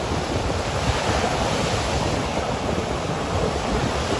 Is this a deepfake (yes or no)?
no